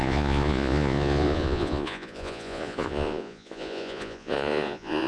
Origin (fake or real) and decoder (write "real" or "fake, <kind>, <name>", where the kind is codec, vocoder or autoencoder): fake, vocoder, Vocos